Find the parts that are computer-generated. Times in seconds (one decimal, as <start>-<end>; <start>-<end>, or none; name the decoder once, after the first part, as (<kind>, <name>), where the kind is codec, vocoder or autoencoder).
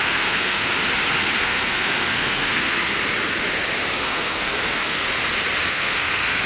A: 0.0-0.7 (codec, SNAC); 1.4-2.9; 4.0-5.0; 5.7-6.5